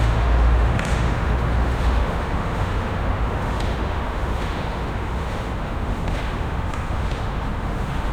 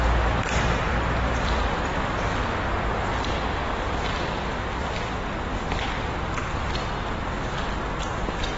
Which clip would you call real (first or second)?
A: second